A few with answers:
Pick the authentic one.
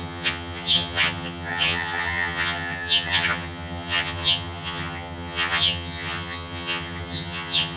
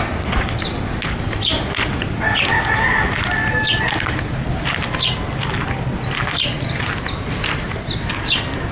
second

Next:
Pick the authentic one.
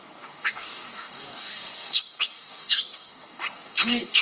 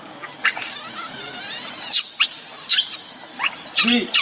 second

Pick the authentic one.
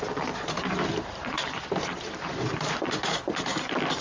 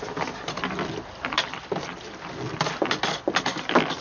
second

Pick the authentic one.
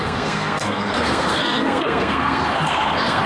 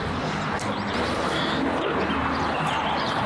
second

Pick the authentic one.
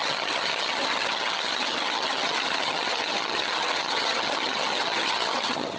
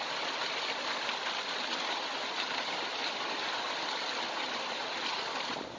second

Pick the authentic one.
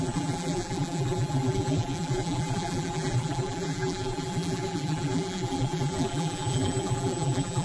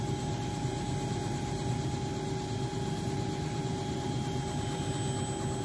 second